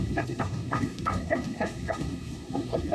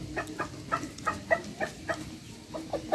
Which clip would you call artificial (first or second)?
first